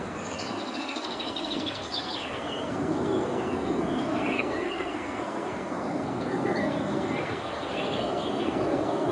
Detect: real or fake fake